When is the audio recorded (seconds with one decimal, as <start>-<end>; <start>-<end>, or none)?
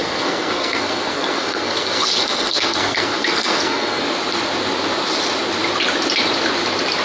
4.0-7.0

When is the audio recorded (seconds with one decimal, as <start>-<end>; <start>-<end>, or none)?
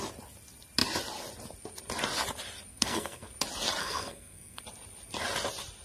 0.0-2.7; 3.3-3.8; 4.6-5.8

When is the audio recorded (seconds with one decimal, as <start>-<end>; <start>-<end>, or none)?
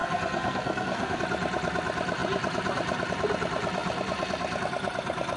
1.2-5.4